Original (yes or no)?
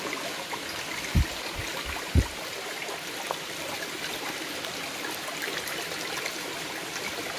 yes